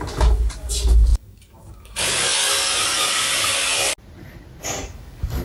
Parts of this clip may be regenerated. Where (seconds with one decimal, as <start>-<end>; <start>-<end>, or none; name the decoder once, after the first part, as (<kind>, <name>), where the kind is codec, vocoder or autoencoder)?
0.0-3.9 (codec, DAC); 4.6-5.4